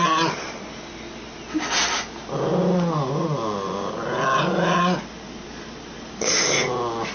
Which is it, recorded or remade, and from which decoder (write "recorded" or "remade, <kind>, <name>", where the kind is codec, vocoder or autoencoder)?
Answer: recorded